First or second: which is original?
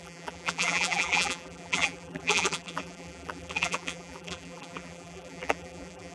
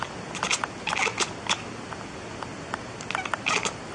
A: second